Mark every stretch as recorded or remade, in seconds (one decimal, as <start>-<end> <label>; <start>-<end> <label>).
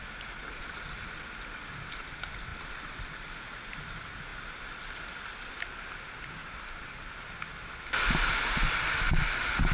0.0-6.4 recorded; 6.4-7.1 remade; 7.1-9.7 recorded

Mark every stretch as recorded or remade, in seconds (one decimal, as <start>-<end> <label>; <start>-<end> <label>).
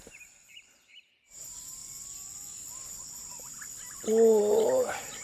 0.0-1.8 remade; 1.8-4.4 recorded; 4.4-5.2 remade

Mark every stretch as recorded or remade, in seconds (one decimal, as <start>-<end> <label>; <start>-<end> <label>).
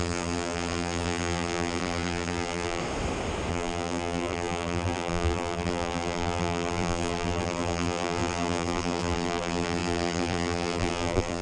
0.0-2.8 remade; 2.8-3.5 recorded; 3.5-11.4 remade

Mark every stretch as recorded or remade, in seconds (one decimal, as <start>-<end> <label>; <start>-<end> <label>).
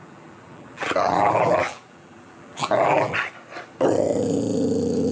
0.0-3.1 remade; 3.1-5.1 recorded